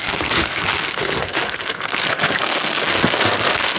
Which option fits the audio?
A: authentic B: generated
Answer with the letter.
B